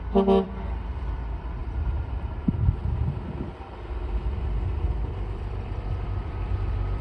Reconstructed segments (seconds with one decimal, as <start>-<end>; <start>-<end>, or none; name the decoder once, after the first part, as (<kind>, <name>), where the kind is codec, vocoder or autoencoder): 0.0-7.0 (vocoder, BigVGAN v2)